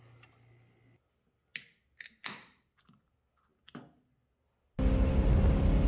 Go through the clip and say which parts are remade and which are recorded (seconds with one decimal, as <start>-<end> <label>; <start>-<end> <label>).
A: 0.0-5.9 recorded